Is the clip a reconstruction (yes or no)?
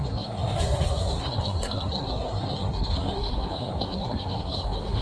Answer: yes